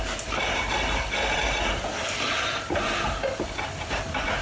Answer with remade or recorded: recorded